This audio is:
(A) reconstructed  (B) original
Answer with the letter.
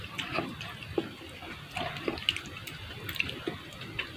B